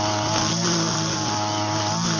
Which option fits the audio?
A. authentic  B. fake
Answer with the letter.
A